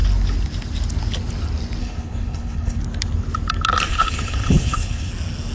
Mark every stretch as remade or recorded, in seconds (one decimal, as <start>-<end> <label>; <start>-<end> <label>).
0.0-1.8 recorded; 1.8-2.8 remade; 2.8-3.9 recorded; 3.9-5.1 remade; 5.1-5.5 recorded

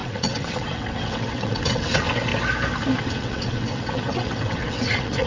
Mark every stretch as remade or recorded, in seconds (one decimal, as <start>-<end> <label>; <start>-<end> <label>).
0.0-2.3 remade; 2.3-3.0 recorded; 3.0-5.3 remade

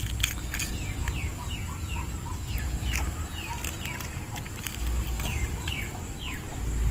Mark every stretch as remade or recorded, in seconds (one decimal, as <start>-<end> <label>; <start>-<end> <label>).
0.0-6.9 recorded

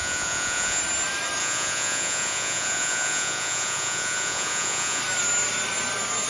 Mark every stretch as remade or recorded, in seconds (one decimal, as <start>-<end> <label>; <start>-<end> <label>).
0.0-0.8 remade; 0.8-1.4 recorded; 1.4-5.0 remade; 5.0-6.3 recorded

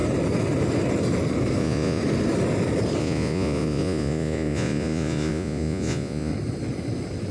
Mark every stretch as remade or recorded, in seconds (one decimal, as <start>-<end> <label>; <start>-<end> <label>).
0.0-1.6 recorded; 1.6-2.0 remade; 2.0-3.0 recorded; 3.0-6.3 remade; 6.3-7.3 recorded

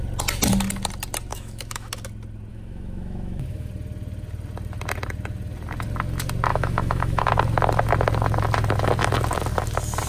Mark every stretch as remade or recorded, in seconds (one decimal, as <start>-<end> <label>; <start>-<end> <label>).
0.0-1.3 recorded; 1.3-1.9 remade; 1.9-2.5 recorded; 2.5-3.7 remade; 3.7-6.5 recorded; 6.5-7.3 remade; 7.3-10.1 recorded